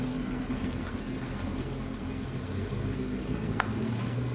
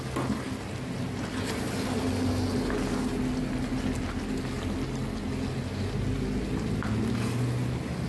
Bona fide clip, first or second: second